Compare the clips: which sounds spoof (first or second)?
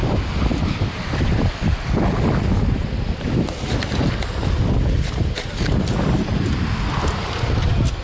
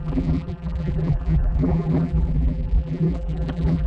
second